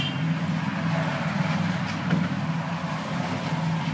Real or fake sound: real